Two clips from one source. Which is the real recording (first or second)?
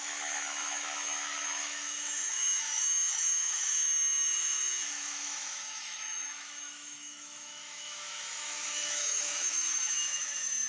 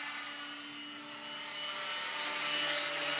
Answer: second